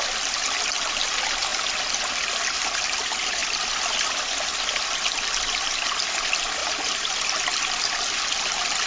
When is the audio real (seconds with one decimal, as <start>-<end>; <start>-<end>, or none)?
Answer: 0.0-8.9